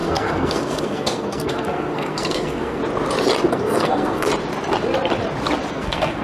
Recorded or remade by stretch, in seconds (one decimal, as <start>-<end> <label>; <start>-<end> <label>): 0.0-2.8 remade; 2.8-3.5 recorded; 3.5-4.3 remade; 4.3-5.7 recorded; 5.7-6.2 remade